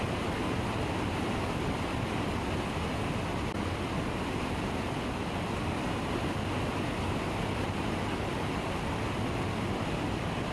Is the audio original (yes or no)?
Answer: yes